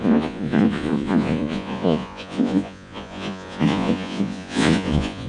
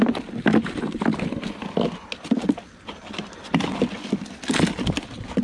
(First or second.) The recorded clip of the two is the second